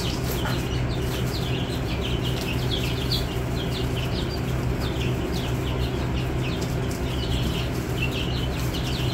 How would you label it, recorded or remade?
recorded